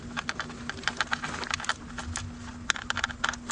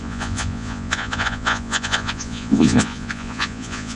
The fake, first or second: second